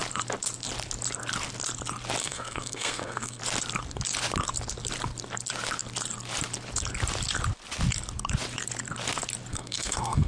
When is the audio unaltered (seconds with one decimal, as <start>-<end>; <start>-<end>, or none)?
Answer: 0.0-2.2; 3.4-9.5